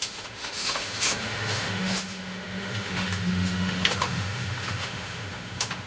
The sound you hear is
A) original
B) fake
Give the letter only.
B